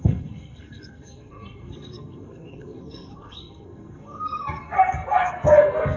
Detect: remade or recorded remade